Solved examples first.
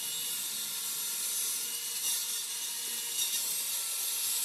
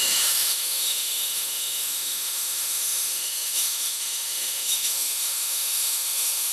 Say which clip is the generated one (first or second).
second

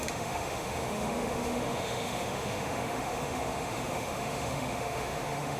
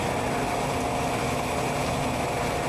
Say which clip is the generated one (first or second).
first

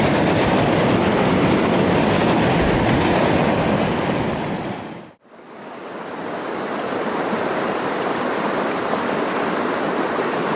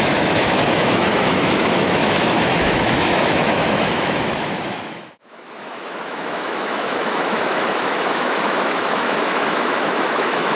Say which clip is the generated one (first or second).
second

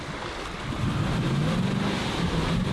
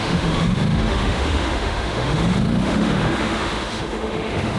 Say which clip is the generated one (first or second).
second